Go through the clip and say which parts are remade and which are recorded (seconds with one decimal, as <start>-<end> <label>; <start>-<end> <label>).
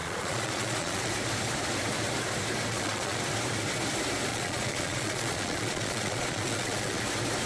0.0-1.1 remade; 1.1-2.7 recorded; 2.7-3.2 remade; 3.2-4.3 recorded; 4.3-7.0 remade; 7.0-7.5 recorded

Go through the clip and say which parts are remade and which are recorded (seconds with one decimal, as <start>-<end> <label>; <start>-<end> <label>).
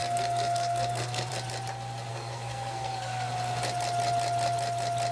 0.0-1.3 remade; 1.3-2.1 recorded; 2.1-3.3 remade; 3.3-5.1 recorded